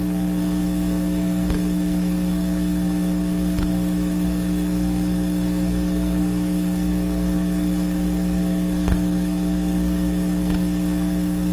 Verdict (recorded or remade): remade